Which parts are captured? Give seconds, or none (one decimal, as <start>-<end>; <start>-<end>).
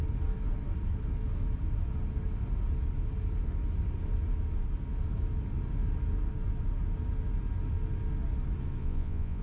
0.0-8.8